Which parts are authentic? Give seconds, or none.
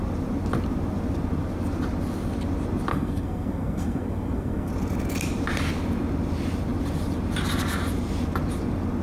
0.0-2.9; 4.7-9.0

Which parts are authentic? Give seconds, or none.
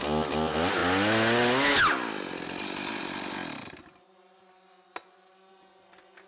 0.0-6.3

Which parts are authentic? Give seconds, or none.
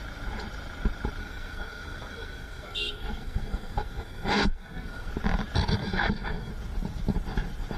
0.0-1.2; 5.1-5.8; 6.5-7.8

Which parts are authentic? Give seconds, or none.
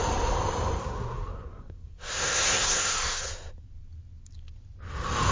0.0-0.8; 3.3-5.3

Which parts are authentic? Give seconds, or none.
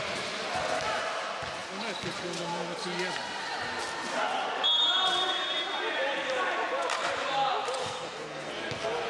0.0-7.8; 8.5-9.1